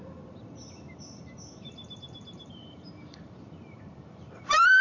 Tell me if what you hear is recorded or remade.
remade